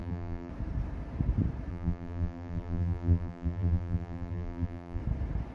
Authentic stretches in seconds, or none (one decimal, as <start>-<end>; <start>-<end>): 0.5-1.7; 5.0-5.5